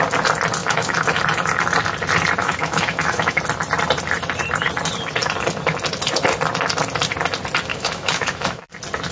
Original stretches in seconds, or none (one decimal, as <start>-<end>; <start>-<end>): 0.0-0.6; 1.2-2.4; 3.4-7.7; 8.6-9.1